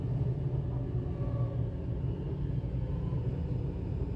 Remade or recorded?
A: recorded